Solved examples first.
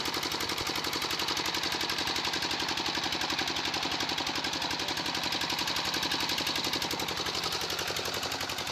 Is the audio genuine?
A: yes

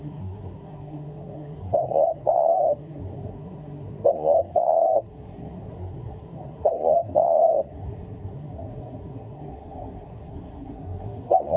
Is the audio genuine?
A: no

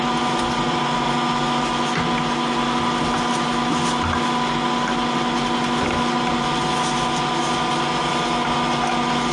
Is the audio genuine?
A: yes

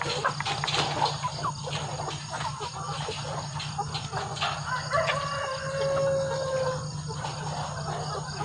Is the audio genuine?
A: yes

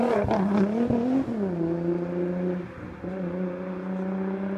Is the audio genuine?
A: yes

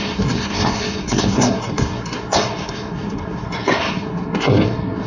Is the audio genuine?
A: no